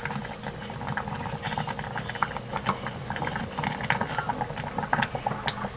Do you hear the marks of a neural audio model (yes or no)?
no